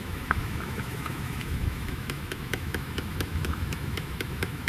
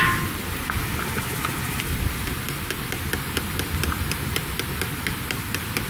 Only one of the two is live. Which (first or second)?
second